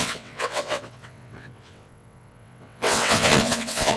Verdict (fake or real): fake